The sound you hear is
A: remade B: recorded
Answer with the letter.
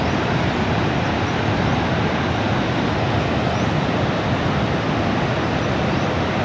B